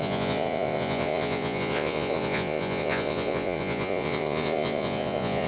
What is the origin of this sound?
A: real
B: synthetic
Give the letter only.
B